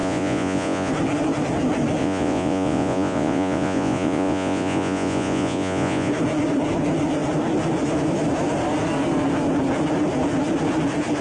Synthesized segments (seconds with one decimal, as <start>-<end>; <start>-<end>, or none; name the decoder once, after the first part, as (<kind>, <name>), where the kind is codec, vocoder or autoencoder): 0.0-0.9 (vocoder, Vocos); 2.0-6.1